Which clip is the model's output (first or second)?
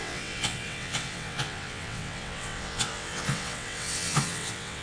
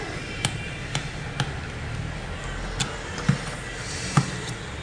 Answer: first